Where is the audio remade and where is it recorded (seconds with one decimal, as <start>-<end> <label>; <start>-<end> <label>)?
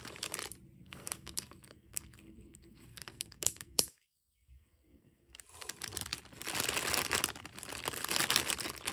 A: 0.0-0.8 recorded; 0.8-5.4 remade; 5.4-8.9 recorded